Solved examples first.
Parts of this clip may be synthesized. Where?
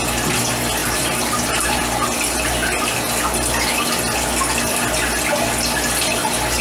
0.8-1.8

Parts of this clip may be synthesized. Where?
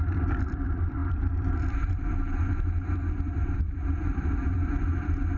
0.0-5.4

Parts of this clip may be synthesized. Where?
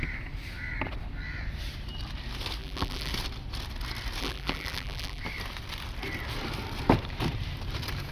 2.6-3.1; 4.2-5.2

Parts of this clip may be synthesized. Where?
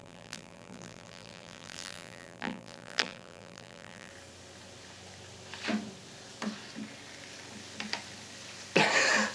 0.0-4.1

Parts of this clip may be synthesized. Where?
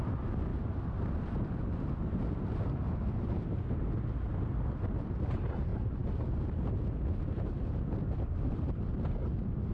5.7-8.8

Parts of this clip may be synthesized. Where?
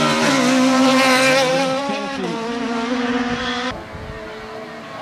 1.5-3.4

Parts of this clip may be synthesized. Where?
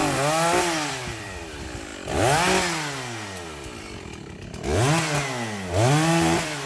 0.9-1.9; 5.9-6.7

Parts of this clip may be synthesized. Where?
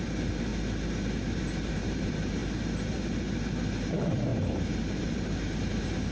0.0-0.5; 1.7-2.4; 3.6-6.1